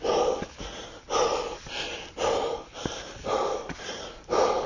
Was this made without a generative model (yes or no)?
yes